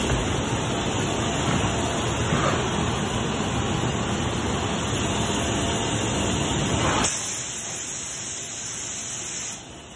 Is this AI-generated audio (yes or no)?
no